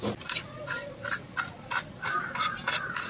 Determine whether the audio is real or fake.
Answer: real